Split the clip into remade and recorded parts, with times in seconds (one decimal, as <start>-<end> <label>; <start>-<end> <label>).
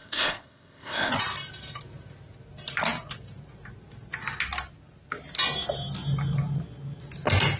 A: 0.0-1.1 remade; 1.1-7.6 recorded